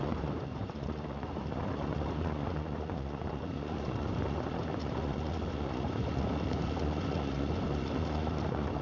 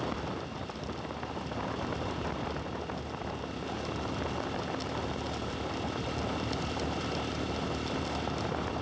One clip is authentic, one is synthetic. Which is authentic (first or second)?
second